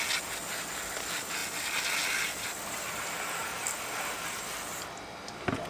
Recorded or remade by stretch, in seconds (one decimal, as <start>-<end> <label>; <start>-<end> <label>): 0.0-5.7 recorded